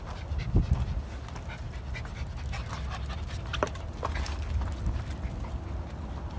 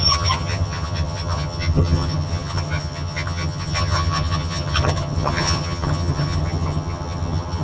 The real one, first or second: first